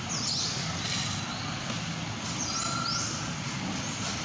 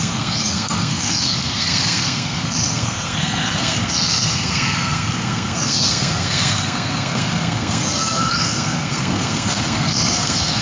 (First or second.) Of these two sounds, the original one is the first